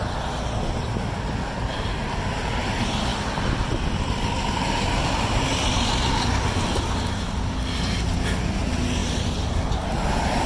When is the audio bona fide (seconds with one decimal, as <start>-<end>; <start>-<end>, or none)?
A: 0.0-10.5